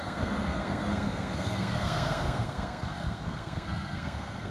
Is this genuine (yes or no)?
no